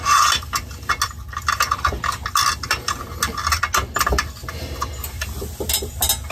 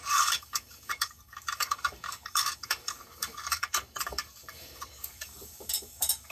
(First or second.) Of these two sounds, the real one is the first